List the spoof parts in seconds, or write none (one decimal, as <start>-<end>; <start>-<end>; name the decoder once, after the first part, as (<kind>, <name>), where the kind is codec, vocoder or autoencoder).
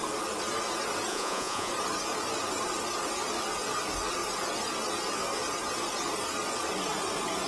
1.1-1.7 (vocoder, Vocos)